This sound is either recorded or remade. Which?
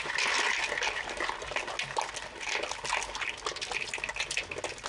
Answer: recorded